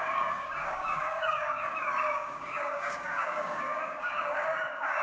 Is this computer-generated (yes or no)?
yes